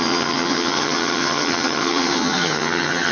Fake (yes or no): yes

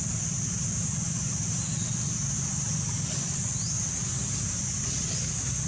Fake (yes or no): no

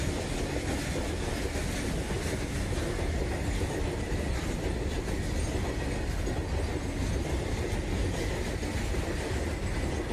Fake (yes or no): no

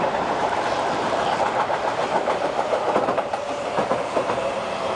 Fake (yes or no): yes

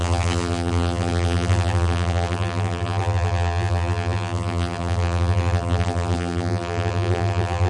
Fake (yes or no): yes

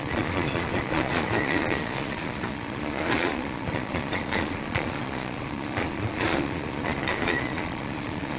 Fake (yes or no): yes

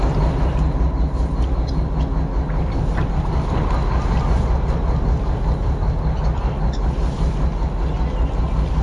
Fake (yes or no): no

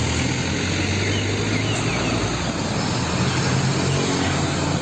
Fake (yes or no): no